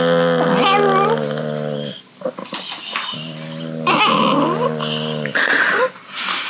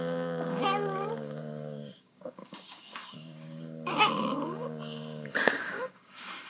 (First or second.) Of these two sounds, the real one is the first